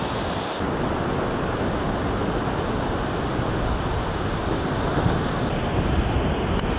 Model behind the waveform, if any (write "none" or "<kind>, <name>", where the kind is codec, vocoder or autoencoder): none